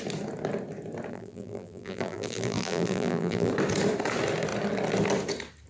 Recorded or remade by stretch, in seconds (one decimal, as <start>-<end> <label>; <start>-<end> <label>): 0.0-1.1 recorded; 1.1-3.5 remade; 3.5-5.7 recorded